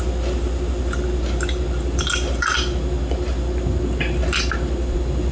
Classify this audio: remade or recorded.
recorded